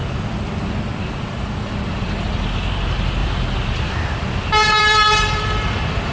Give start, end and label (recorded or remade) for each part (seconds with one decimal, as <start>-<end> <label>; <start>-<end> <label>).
0.0-1.2 recorded; 1.2-3.2 remade; 3.2-4.8 recorded; 4.8-6.1 remade